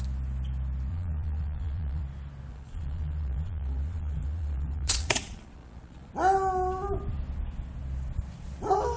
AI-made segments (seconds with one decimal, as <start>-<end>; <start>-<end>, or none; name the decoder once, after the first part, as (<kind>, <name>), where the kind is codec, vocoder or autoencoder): 0.9-2.0 (vocoder, Vocos); 2.5-6.1